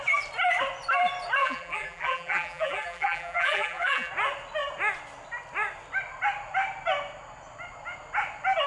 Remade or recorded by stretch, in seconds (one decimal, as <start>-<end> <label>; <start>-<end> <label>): 0.0-1.4 recorded; 1.4-4.1 remade; 4.1-8.7 recorded